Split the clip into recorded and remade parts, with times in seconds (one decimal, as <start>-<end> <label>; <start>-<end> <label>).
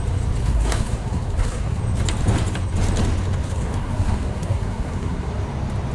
0.0-0.4 recorded; 0.4-1.8 remade; 1.8-3.4 recorded; 3.4-5.3 remade; 5.3-5.9 recorded